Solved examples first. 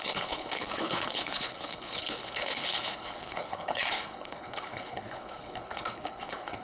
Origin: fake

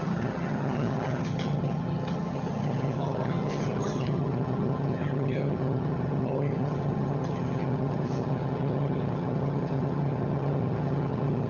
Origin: fake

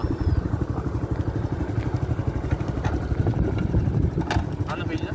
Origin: real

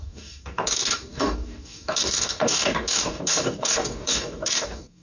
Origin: fake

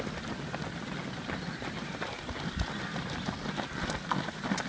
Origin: real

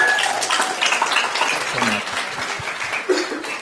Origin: real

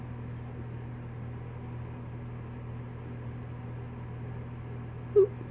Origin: real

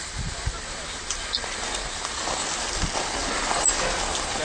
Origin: real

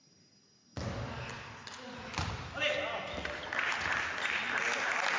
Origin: real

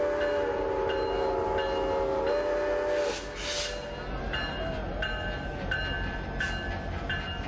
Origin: real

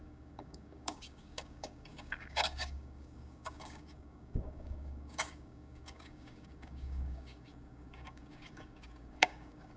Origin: fake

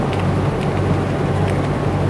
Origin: real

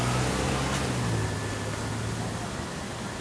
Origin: real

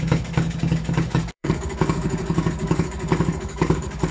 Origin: fake